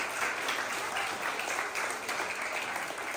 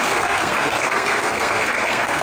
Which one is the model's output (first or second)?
second